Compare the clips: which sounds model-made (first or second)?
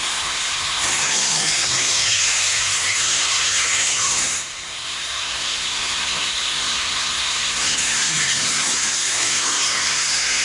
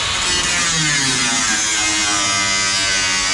first